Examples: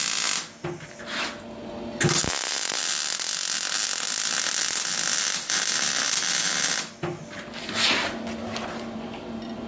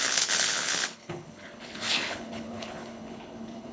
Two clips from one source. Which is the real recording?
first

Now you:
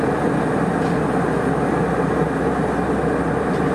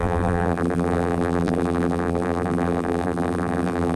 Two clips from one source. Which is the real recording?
first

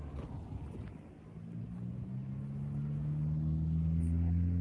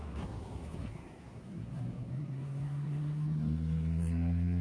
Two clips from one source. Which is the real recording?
first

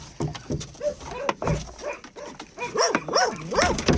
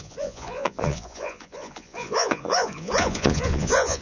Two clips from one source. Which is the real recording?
first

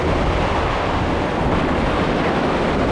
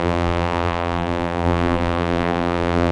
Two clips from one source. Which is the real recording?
first